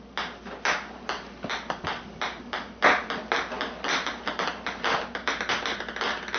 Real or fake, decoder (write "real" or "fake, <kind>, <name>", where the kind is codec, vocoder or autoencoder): real